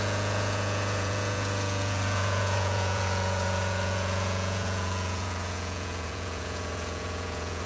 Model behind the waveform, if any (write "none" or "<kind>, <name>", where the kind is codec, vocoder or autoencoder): vocoder, Vocos